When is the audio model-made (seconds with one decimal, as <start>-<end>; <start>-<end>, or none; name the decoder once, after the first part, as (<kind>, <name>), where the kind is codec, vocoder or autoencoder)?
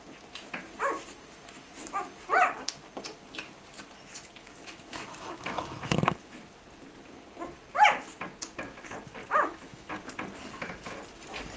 4.4-6.4 (autoencoder, DAC-VAE); 9.2-9.9